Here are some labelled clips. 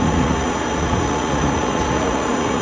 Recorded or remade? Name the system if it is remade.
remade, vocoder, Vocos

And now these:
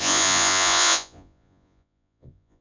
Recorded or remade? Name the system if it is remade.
remade, vocoder, Vocos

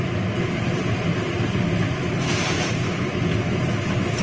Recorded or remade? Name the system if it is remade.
recorded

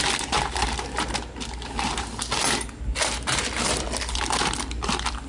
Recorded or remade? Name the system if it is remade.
recorded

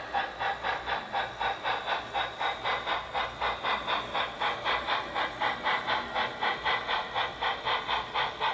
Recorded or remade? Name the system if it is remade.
recorded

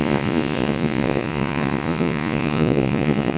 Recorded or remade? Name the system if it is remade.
remade, vocoder, Vocos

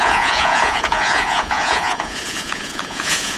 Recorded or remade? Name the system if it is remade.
remade, vocoder, Vocos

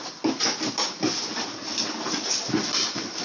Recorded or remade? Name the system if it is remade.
recorded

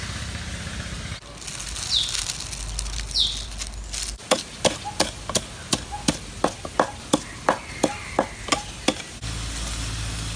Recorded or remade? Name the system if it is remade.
recorded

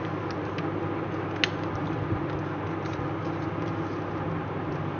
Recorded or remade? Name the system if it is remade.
recorded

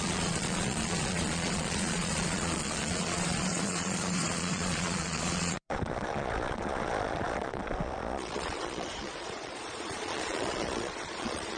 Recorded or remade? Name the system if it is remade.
remade, vocoder, Vocos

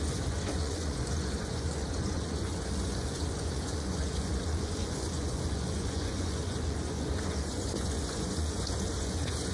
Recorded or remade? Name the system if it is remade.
remade, vocoder, Vocos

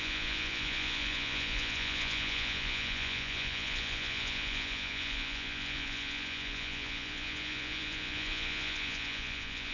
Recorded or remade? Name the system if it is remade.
remade, vocoder, Vocos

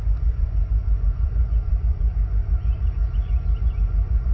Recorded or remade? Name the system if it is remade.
remade, vocoder, Vocos